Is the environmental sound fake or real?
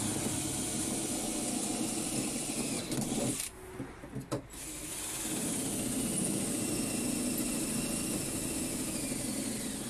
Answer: real